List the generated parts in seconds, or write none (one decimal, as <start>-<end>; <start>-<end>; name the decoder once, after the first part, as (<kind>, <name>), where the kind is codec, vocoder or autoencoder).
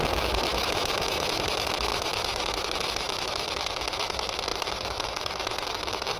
0.0-6.2 (autoencoder, DAC-VAE)